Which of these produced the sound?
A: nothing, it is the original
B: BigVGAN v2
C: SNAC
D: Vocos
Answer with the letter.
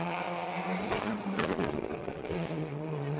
D